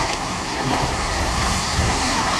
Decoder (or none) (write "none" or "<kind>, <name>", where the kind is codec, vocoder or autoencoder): codec, SNAC